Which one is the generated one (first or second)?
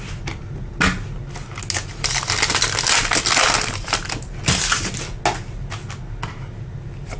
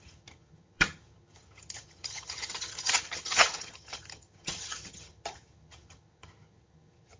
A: second